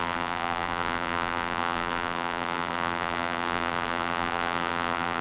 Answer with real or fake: fake